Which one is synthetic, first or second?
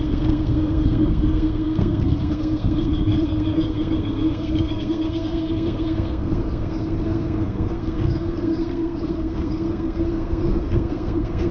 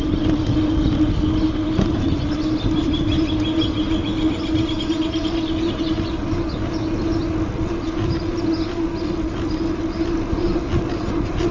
first